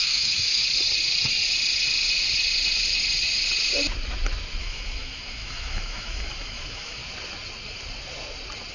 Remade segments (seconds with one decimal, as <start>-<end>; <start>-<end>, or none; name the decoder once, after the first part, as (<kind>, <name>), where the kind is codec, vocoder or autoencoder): 0.0-0.6 (autoencoder, DAC-VAE); 4.6-7.0